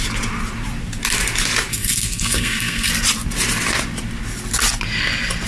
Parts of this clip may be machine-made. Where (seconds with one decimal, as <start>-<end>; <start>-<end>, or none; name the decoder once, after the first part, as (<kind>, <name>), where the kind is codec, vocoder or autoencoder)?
1.7-2.9 (codec, SNAC)